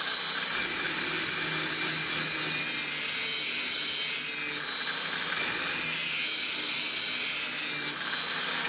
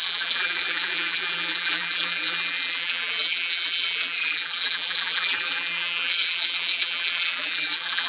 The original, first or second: first